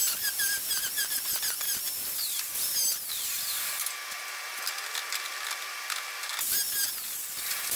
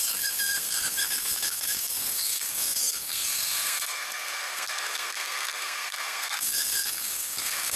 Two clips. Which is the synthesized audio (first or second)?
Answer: second